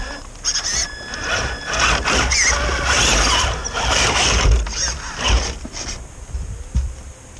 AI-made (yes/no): no